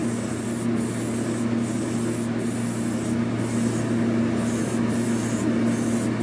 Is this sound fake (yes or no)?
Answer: no